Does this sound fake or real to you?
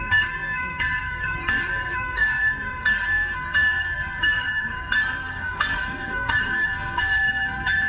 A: fake